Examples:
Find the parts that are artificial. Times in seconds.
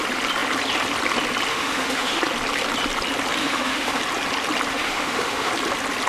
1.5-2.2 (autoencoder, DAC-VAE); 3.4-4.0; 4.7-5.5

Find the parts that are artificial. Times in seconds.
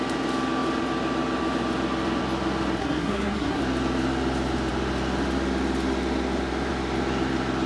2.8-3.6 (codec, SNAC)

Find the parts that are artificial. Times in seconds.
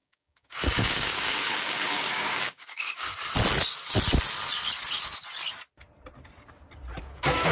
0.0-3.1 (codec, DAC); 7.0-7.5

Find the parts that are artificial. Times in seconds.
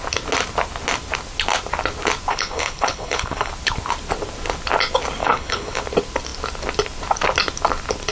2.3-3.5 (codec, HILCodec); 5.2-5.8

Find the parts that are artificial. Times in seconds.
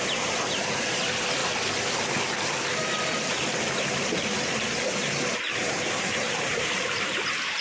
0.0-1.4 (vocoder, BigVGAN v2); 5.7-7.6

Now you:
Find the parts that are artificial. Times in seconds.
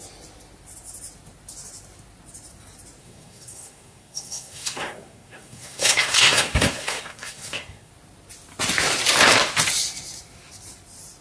3.0-7.9 (codec, SNAC)